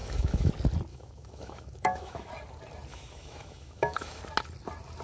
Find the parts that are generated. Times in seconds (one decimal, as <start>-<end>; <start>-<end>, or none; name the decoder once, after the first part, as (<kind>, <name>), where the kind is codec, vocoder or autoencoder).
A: 0.0-0.5 (autoencoder, DAC-VAE); 0.9-2.3; 2.9-4.2